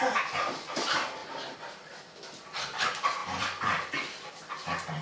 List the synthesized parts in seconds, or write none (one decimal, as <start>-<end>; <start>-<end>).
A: 1.2-1.9; 3.2-4.3